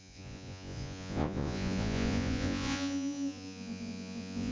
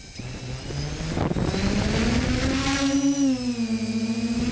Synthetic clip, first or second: first